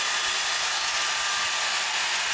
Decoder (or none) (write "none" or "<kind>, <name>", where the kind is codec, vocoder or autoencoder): vocoder, BigVGAN v2